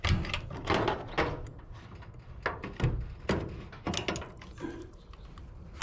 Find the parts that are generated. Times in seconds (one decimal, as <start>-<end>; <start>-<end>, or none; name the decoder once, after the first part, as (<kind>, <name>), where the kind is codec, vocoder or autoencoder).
none